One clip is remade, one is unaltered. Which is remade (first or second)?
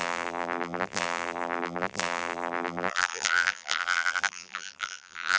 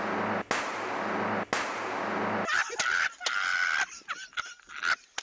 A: first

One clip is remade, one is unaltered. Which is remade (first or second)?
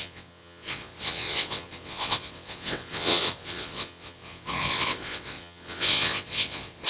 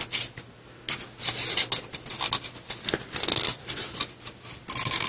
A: first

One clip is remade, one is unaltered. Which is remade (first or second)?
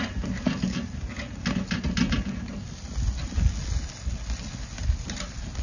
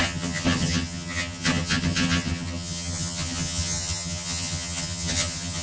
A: second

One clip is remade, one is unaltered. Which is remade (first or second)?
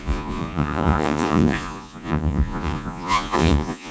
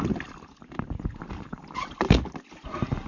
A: first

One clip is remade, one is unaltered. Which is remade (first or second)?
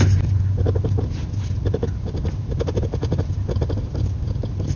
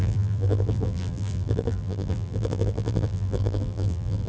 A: second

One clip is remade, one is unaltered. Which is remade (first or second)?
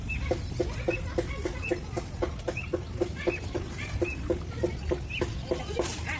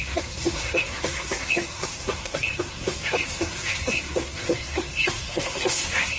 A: second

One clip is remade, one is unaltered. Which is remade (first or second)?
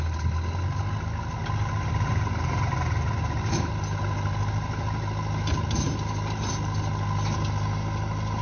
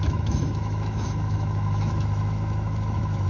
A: second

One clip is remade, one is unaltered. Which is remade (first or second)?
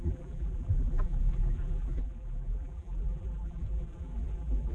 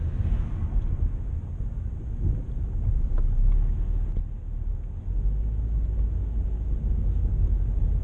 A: first